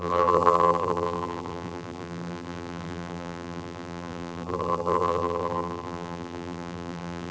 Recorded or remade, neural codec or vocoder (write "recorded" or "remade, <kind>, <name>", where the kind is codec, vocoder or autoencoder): remade, vocoder, BigVGAN v2